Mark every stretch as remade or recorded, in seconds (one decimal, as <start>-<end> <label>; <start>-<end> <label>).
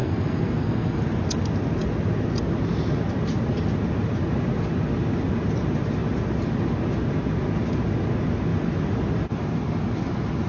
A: 0.0-1.0 remade; 1.0-10.5 recorded